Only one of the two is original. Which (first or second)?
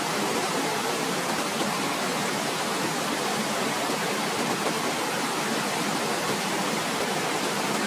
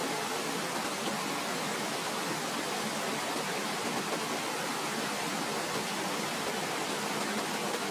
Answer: second